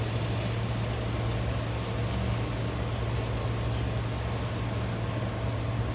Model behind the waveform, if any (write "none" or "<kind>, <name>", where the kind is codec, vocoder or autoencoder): none